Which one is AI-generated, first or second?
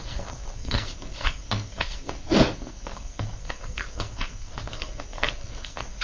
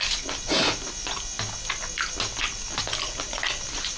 first